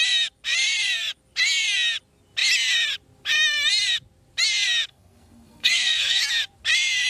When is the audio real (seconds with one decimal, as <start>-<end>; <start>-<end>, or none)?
0.0-4.9; 6.2-7.1